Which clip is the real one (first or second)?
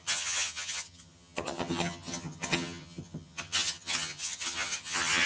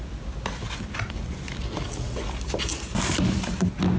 second